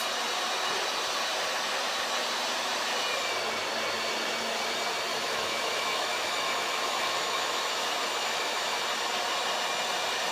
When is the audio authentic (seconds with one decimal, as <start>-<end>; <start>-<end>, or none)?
0.0-5.1; 8.8-10.3